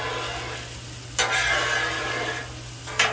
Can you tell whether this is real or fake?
real